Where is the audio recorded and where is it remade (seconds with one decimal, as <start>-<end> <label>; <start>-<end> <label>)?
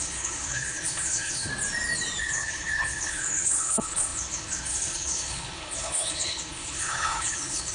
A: 0.0-1.5 remade; 1.5-2.2 recorded; 2.2-7.7 remade